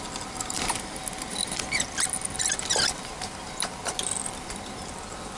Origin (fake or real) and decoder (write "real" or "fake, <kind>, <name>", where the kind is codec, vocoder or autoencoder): real